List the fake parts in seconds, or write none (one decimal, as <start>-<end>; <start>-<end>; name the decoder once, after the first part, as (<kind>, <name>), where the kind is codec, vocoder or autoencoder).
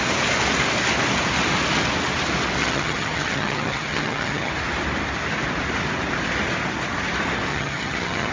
2.6-4.5 (vocoder, HiFi-GAN); 7.5-8.3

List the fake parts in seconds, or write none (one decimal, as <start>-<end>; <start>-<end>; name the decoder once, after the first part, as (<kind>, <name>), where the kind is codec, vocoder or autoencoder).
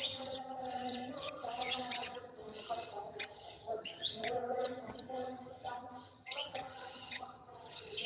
0.0-8.1 (vocoder, HiFi-GAN)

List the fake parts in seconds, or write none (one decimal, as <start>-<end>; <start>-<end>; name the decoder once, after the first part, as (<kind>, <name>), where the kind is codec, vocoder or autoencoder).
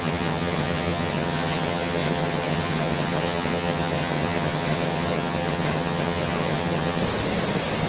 0.0-7.0 (vocoder, HiFi-GAN)